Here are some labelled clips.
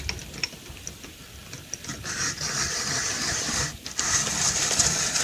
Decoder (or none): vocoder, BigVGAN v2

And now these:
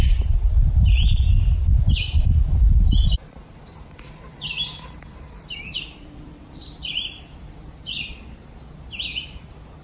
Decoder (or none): vocoder, BigVGAN v2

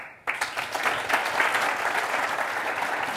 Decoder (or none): none